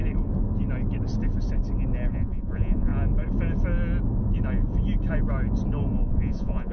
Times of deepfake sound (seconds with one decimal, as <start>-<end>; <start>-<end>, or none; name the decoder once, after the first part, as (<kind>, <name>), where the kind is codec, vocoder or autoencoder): 2.1-2.9 (vocoder, Vocos); 6.1-6.7